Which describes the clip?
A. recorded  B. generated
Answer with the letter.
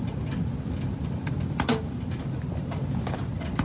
A